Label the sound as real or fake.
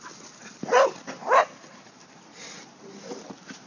real